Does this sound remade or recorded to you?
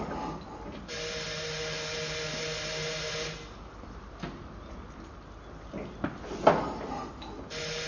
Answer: recorded